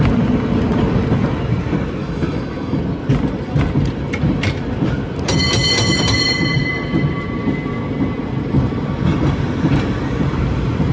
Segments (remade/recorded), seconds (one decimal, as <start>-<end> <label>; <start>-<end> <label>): 0.0-2.0 recorded; 2.0-2.8 remade; 2.8-10.9 recorded